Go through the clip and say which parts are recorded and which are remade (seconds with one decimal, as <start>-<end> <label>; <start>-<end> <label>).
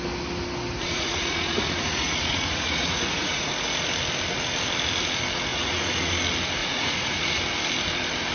0.0-0.8 recorded; 0.8-3.5 remade; 3.5-5.5 recorded; 5.5-6.1 remade; 6.1-6.6 recorded; 6.6-7.4 remade; 7.4-8.3 recorded